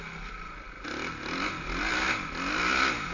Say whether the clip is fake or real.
real